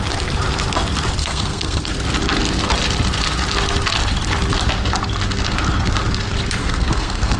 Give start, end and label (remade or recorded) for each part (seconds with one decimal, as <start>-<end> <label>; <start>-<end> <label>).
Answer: 0.0-1.2 recorded; 1.2-1.9 remade; 1.9-6.6 recorded; 6.6-7.4 remade